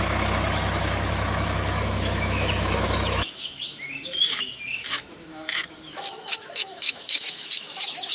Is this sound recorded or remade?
remade